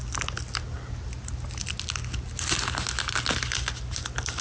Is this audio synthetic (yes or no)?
no